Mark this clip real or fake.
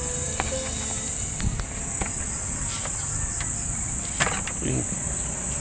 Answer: real